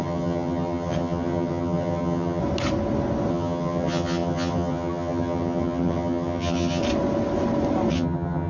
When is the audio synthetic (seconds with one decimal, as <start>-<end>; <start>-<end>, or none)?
0.0-2.4; 3.3-6.8; 7.9-8.5